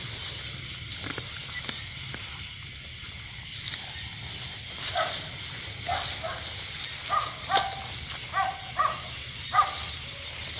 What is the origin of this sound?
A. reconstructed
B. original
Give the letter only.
B